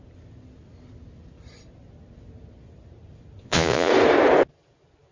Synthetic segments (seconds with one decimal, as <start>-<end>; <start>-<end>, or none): 3.4-3.9